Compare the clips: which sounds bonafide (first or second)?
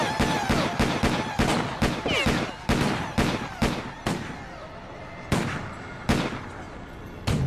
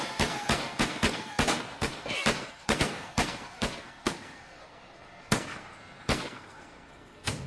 first